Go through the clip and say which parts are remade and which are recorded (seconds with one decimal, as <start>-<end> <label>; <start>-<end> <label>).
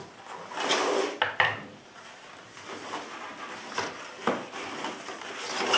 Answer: 0.0-1.7 recorded; 1.7-2.3 remade; 2.3-5.8 recorded